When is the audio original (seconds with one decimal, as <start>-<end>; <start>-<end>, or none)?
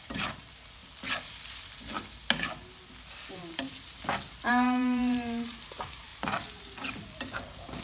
0.8-3.3; 6.1-7.8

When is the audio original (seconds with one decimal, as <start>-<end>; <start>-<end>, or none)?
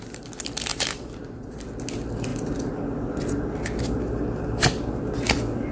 0.0-0.7; 1.6-5.7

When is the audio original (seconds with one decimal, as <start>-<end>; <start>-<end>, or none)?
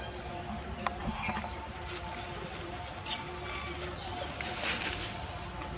0.0-5.8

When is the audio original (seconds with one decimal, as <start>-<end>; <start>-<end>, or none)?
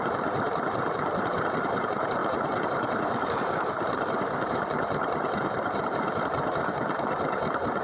none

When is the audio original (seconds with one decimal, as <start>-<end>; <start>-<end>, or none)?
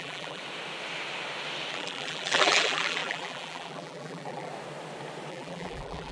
0.4-1.7; 4.5-5.3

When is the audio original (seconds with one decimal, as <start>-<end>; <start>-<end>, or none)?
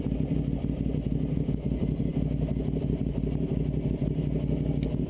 0.0-5.1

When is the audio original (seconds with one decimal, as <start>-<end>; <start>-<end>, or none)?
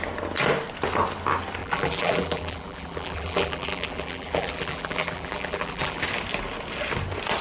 0.0-1.6; 6.0-7.4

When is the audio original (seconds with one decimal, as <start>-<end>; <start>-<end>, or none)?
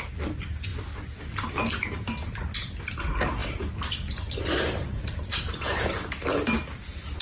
0.0-3.4; 4.9-5.7; 6.4-7.2